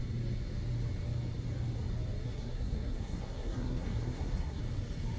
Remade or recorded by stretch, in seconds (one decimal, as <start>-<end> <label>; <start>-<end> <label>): 0.0-2.2 recorded; 2.2-4.6 remade; 4.6-5.2 recorded